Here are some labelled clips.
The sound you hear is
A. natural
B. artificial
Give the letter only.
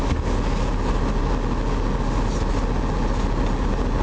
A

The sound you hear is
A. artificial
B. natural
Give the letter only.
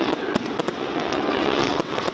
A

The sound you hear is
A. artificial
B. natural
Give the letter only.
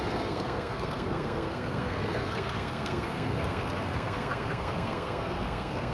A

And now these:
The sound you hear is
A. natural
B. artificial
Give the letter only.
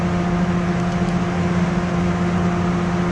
A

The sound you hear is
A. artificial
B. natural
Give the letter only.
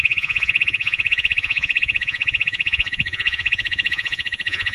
A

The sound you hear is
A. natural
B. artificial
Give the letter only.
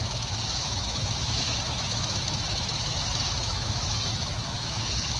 B